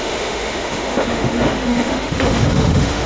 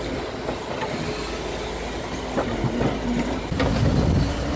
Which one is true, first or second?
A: second